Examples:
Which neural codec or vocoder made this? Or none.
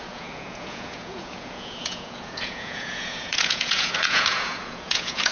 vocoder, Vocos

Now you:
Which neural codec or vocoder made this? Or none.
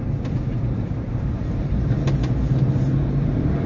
vocoder, BigVGAN v2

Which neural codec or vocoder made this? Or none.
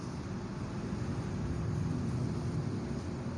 none